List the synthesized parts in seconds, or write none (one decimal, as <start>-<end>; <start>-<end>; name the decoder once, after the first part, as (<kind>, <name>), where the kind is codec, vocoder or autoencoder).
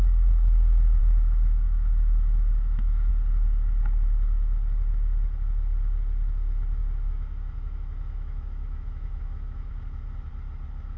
1.0-3.1 (autoencoder, DAC-VAE); 6.8-9.7